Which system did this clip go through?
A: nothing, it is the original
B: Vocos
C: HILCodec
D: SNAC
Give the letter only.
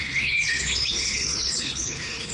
C